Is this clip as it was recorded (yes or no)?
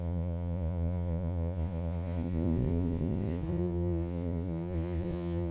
no